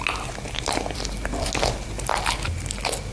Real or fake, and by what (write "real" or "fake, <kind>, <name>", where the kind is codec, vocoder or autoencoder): real